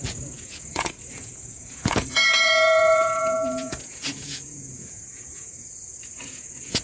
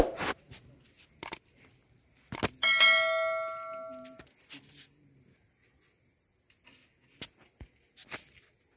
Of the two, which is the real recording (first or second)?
second